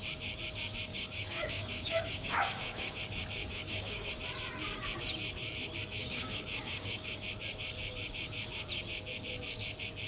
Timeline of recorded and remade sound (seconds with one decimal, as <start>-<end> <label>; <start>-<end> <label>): 0.0-0.9 recorded; 0.9-3.0 remade; 3.0-3.4 recorded; 3.4-4.1 remade; 4.1-6.0 recorded; 6.0-7.1 remade; 7.1-10.1 recorded